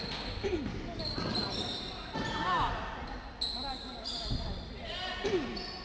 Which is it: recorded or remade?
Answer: recorded